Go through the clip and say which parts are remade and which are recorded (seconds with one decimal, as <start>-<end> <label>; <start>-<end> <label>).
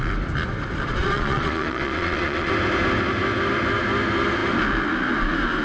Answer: 0.0-1.0 recorded; 1.0-2.5 remade; 2.5-5.6 recorded